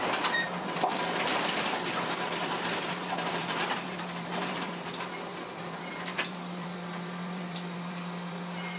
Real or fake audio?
fake